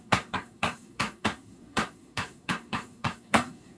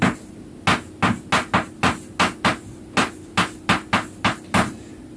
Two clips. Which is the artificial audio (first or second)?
first